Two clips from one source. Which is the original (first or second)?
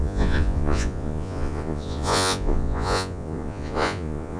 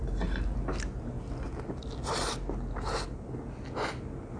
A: second